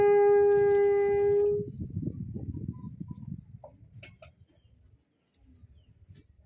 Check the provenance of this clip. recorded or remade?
recorded